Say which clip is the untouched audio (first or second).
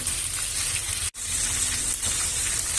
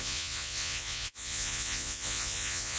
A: first